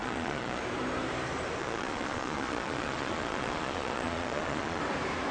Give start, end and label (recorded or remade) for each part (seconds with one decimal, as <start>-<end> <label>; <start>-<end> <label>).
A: 0.0-0.6 remade; 0.6-1.6 recorded; 1.6-4.8 remade; 4.8-5.3 recorded